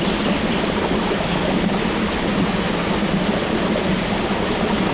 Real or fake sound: real